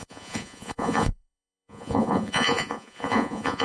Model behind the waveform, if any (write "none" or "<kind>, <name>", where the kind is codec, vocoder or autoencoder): vocoder, Vocos